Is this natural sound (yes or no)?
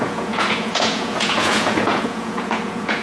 no